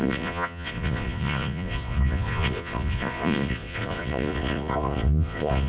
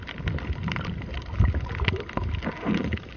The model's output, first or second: first